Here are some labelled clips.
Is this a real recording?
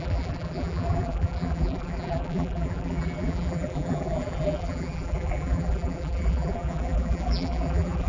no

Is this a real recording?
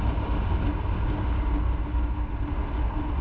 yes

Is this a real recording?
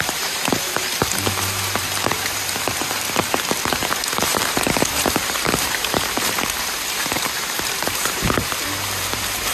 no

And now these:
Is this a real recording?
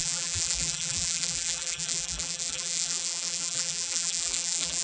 no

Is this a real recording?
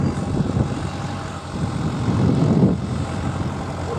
yes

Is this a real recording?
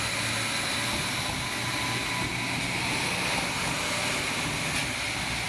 yes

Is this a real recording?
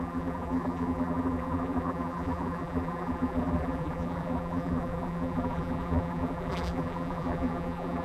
no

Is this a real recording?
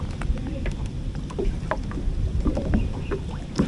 no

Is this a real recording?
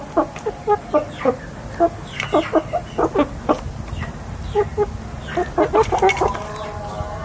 yes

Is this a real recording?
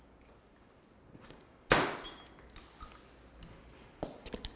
yes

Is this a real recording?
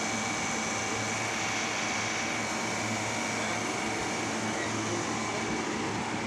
yes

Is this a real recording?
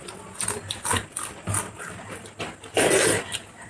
yes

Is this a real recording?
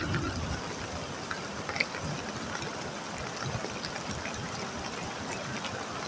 yes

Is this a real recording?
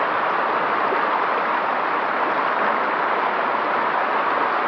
yes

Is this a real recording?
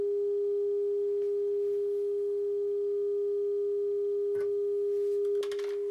yes